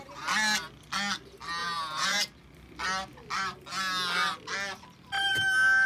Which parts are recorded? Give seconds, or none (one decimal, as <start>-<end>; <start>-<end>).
0.0-1.6; 2.2-5.9